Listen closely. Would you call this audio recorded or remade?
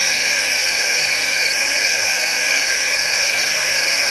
remade